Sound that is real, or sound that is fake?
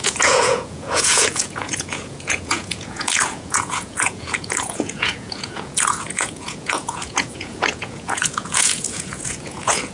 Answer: fake